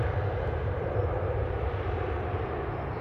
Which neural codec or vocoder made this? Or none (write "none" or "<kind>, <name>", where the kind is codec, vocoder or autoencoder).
vocoder, BigVGAN v2